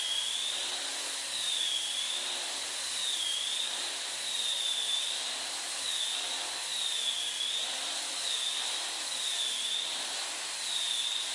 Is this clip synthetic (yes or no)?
no